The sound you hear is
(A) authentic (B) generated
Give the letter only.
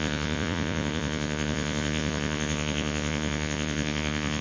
B